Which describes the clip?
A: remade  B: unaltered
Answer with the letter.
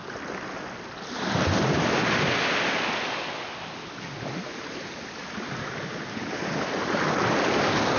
B